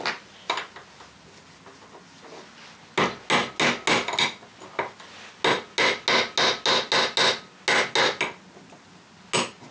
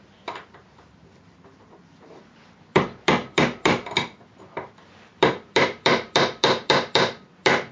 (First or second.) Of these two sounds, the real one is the first